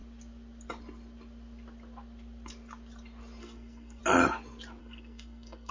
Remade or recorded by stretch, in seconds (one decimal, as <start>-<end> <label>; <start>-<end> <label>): 0.0-3.4 recorded; 3.4-4.0 remade; 4.0-4.8 recorded; 4.8-5.7 remade